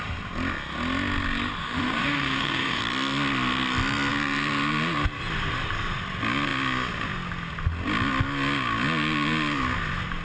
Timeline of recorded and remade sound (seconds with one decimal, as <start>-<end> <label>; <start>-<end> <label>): 0.0-1.6 recorded; 1.6-2.8 remade; 2.8-10.2 recorded